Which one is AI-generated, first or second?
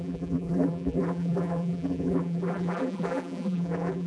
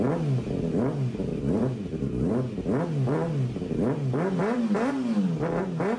first